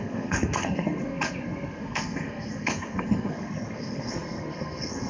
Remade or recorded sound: remade